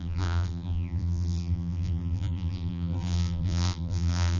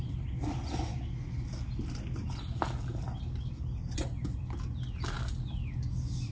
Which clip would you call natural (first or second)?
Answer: second